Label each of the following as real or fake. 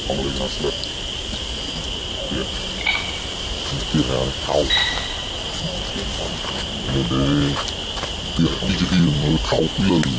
real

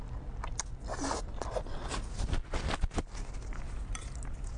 real